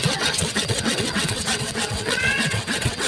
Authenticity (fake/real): fake